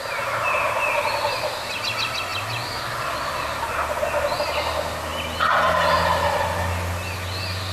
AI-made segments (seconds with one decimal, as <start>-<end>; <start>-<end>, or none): none